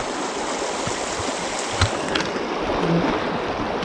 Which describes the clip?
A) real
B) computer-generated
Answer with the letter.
A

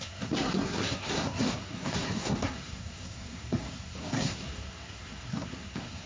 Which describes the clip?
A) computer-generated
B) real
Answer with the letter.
A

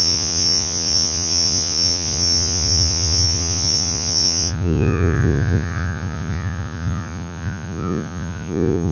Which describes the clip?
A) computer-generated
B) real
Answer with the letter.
A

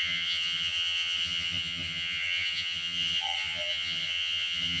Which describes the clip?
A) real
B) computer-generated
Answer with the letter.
B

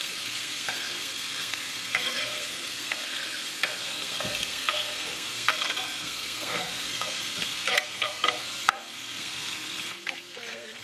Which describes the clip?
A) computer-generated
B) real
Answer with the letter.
A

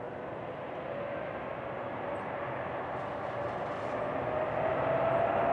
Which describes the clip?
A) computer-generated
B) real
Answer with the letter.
B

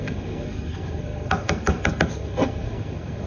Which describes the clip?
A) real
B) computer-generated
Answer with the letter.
B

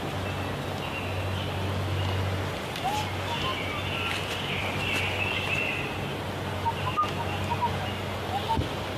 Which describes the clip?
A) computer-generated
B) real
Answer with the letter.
B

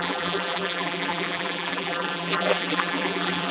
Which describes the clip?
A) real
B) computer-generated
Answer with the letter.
B